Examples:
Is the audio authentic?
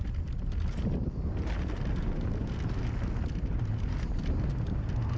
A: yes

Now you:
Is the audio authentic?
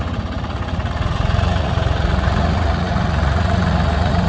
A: no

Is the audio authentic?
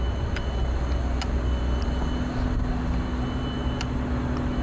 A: yes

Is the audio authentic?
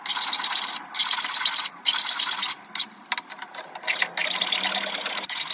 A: yes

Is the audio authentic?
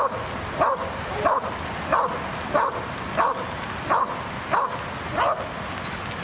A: yes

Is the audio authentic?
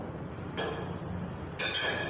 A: yes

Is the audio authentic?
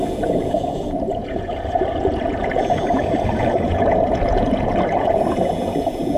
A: no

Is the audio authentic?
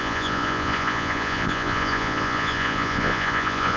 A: no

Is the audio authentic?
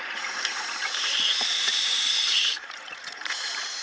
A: no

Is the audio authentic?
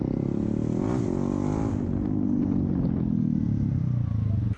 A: yes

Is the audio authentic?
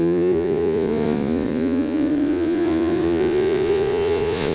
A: no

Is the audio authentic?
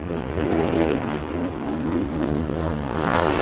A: no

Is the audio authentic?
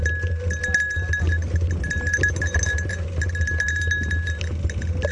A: yes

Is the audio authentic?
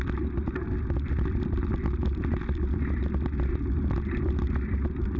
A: yes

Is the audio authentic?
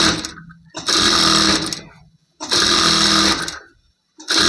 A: yes